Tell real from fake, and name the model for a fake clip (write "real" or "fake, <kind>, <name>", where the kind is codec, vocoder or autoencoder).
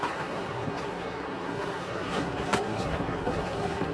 fake, codec, SNAC